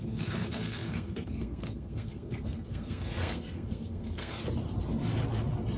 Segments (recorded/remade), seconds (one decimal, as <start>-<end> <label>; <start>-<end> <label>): 0.0-4.4 remade; 4.4-5.8 recorded